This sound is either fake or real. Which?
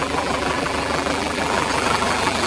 fake